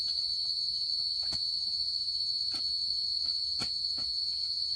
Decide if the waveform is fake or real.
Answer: real